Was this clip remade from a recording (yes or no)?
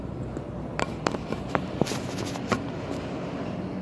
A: no